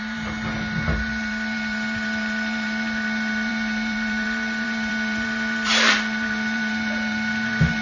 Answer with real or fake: fake